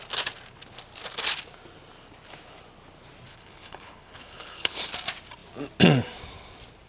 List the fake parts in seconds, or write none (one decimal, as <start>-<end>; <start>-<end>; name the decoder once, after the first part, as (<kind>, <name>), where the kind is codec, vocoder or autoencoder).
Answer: 3.3-4.8 (codec, HILCodec)